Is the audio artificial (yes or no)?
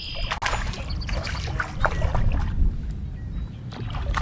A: no